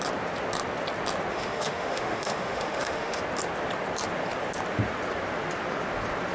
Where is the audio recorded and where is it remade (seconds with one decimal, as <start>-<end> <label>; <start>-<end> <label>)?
0.0-1.3 recorded; 1.3-3.2 remade; 3.2-6.3 recorded